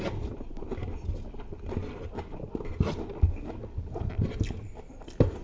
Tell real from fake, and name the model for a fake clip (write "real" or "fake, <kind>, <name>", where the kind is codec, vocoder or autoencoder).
real